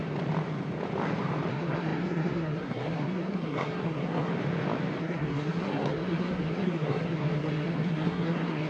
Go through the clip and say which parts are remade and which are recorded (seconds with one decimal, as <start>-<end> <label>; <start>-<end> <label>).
0.0-1.5 recorded; 1.5-4.3 remade; 4.3-5.0 recorded; 5.0-8.7 remade